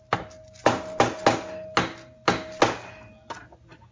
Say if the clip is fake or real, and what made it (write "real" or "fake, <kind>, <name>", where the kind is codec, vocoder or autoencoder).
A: real